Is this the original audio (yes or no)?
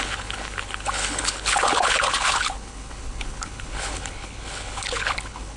no